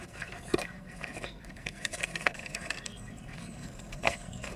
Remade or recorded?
remade